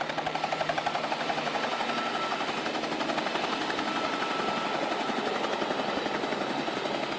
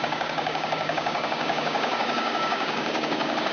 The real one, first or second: first